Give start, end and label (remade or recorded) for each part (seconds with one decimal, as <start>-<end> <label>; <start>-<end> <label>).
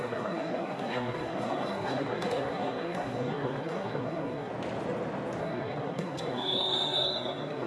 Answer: 0.0-4.5 remade; 4.5-5.4 recorded; 5.4-7.7 remade